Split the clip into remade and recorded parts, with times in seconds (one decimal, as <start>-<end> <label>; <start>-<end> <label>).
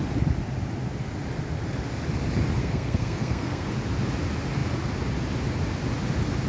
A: 0.0-2.6 recorded; 2.6-3.7 remade; 3.7-6.5 recorded